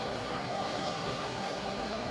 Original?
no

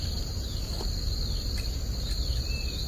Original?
yes